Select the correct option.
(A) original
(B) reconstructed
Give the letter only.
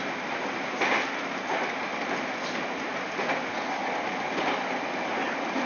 A